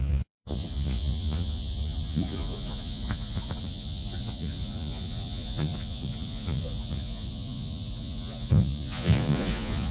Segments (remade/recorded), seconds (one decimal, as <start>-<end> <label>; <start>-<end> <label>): 0.0-9.9 remade

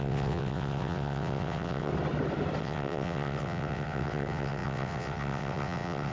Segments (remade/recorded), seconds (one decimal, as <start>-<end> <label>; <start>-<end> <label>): 0.0-1.9 remade; 1.9-2.6 recorded; 2.6-6.1 remade

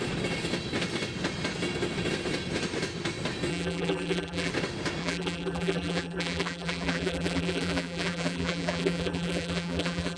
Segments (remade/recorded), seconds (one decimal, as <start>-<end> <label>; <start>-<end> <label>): 0.0-3.5 recorded; 3.5-4.5 remade; 4.5-5.0 recorded; 5.0-10.2 remade

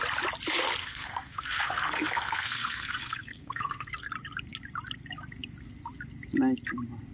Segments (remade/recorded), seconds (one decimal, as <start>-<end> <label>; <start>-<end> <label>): 0.0-0.8 recorded; 0.8-4.1 remade; 4.1-7.1 recorded

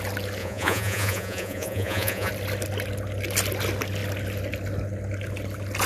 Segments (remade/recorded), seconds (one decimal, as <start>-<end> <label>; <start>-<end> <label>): 0.0-0.4 recorded; 0.4-2.3 remade; 2.3-5.9 recorded

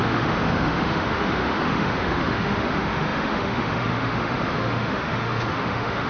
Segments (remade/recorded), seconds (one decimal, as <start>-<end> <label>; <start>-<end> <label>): 0.0-6.1 remade

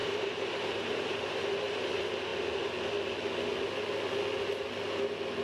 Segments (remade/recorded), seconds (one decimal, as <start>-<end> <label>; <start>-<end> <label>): 0.0-1.9 remade; 1.9-5.4 recorded

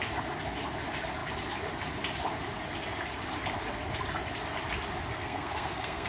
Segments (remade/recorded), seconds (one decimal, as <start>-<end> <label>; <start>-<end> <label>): 0.0-5.1 recorded; 5.1-6.1 remade